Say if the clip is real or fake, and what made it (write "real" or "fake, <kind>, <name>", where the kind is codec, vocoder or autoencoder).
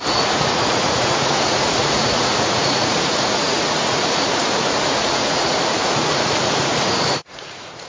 fake, vocoder, Vocos